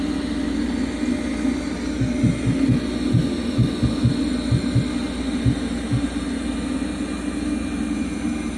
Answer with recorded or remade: recorded